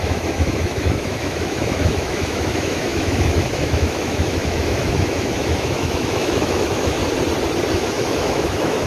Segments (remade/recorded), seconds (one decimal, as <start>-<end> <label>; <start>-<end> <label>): 0.0-7.0 remade; 7.0-7.7 recorded; 7.7-8.9 remade